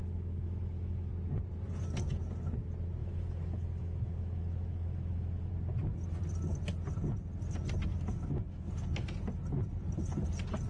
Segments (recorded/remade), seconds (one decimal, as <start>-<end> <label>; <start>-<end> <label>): 0.0-1.1 remade; 1.1-3.0 recorded; 3.0-5.5 remade; 5.5-7.9 recorded; 7.9-8.7 remade; 8.7-10.7 recorded